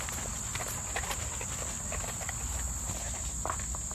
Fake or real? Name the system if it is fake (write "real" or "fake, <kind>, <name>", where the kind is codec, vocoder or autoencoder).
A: real